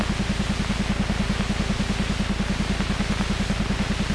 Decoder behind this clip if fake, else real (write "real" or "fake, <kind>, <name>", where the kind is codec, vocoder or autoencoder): real